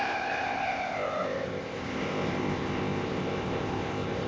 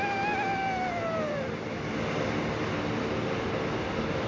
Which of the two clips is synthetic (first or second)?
first